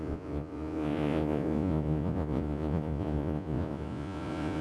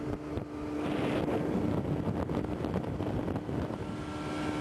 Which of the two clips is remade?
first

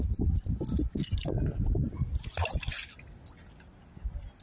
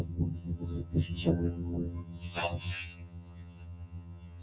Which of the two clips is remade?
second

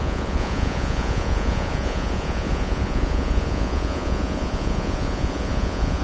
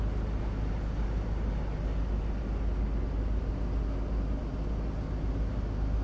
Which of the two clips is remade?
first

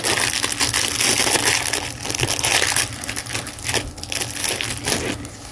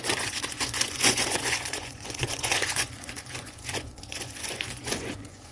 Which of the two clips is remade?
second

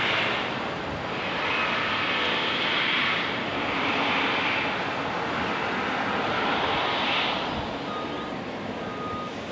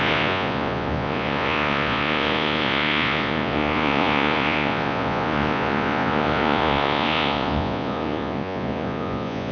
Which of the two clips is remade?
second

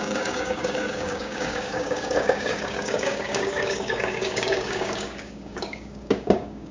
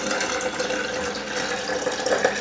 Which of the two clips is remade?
first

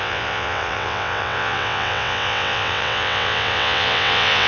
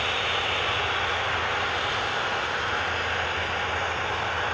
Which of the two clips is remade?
first